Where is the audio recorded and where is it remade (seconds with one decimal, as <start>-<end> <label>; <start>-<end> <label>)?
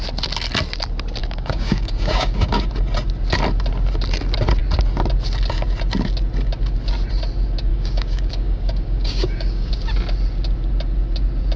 0.0-1.2 recorded; 1.2-2.7 remade; 2.7-7.7 recorded; 7.7-9.7 remade; 9.7-11.6 recorded